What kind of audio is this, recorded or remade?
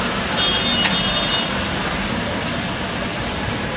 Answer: recorded